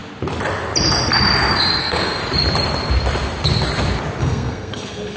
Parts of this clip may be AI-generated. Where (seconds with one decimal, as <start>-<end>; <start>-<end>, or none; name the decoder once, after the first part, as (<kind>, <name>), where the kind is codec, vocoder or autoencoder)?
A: 1.8-2.2 (codec, SNAC); 4.2-5.2